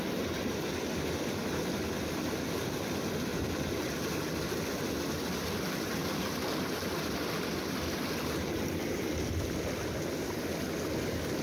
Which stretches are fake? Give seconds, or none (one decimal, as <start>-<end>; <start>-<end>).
none